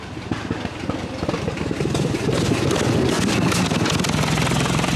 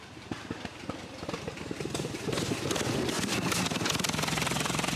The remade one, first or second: second